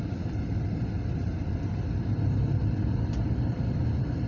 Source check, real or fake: fake